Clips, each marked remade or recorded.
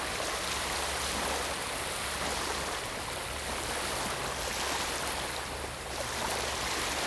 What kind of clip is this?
recorded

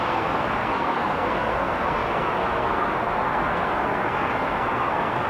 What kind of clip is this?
remade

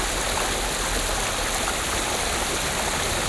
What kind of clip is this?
recorded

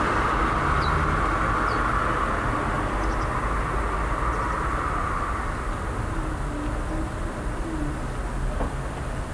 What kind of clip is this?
recorded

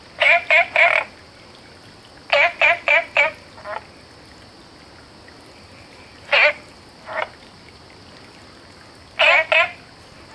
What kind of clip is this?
recorded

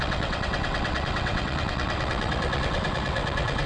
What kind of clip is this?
remade